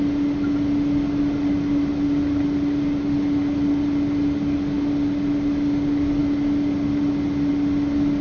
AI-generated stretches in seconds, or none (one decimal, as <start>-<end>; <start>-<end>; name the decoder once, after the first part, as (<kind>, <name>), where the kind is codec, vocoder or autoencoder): none